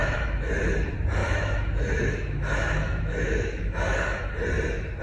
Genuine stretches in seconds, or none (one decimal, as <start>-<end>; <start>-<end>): 0.5-1.2; 4.2-5.0

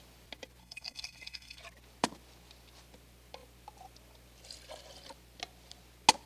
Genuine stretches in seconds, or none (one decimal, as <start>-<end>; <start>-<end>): 0.0-0.6; 1.6-6.3

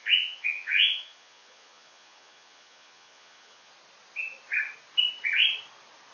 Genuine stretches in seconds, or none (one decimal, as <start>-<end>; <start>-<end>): 3.7-6.1

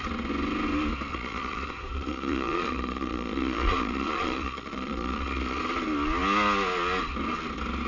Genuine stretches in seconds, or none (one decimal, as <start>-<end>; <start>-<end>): 0.0-1.1; 5.6-7.9